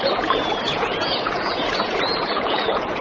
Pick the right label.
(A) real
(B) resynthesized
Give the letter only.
B